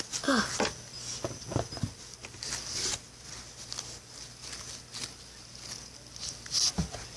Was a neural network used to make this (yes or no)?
no